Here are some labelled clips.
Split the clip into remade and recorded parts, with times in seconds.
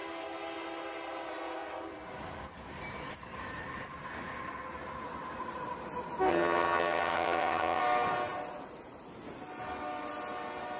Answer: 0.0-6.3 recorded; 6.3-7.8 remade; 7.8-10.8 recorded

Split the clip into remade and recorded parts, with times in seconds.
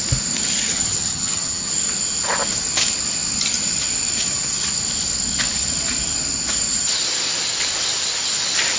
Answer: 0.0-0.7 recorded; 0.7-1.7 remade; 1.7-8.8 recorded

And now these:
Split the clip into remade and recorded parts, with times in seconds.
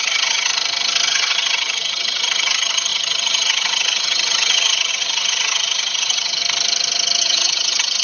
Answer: 0.0-0.5 remade; 0.5-1.1 recorded; 1.1-6.4 remade; 6.4-7.2 recorded; 7.2-8.0 remade